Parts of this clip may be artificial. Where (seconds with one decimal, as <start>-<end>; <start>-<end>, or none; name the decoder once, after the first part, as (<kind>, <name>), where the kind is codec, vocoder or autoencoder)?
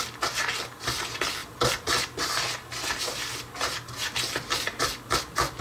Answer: none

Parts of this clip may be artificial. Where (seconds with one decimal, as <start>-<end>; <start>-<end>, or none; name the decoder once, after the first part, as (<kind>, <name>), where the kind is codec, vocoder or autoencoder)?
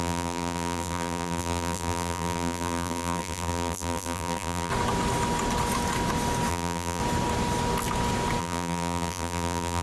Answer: 0.0-4.7 (vocoder, BigVGAN v2); 6.5-7.0; 8.4-9.8